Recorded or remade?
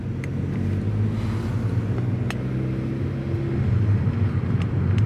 recorded